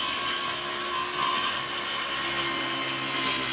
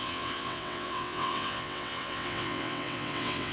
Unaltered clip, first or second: first